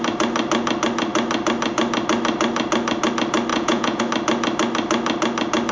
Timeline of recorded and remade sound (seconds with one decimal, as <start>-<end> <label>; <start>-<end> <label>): 0.0-3.5 recorded; 3.5-4.0 remade; 4.0-5.7 recorded